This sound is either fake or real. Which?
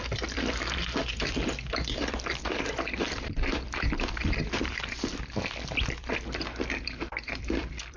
fake